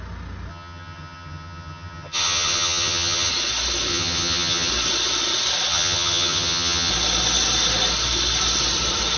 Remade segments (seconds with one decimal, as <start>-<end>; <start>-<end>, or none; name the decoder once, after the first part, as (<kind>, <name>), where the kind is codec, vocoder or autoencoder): 0.5-3.3 (vocoder, HiFi-GAN); 3.9-4.7; 5.7-6.9